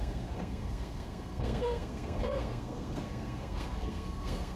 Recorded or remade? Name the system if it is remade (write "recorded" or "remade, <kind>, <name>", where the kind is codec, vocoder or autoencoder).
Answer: remade, codec, SNAC